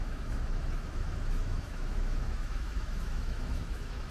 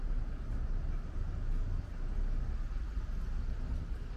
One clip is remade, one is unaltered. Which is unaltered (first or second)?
second